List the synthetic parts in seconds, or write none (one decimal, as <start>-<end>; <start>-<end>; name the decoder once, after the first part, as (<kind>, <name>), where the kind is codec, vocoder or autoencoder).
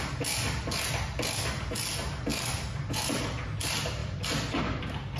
2.3-3.2 (vocoder, BigVGAN v2); 4.0-4.8